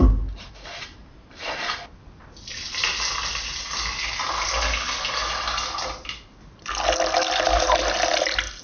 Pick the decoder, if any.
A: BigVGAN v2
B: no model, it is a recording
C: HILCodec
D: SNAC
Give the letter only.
B